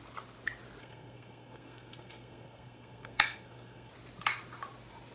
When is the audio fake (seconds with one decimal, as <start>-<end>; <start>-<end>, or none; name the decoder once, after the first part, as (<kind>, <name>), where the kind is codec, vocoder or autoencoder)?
0.8-3.9 (codec, SNAC)